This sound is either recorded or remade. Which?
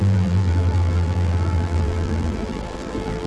remade